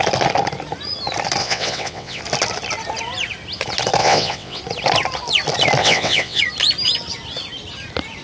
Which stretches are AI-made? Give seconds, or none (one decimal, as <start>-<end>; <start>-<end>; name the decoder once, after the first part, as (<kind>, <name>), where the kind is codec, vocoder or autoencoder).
1.4-2.2 (vocoder, WaveNeXt); 4.0-4.6; 5.8-6.4